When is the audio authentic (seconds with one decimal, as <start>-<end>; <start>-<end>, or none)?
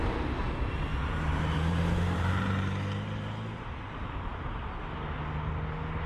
0.0-0.9; 3.9-6.1